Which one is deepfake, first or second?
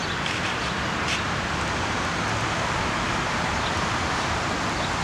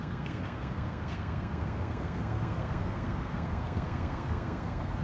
second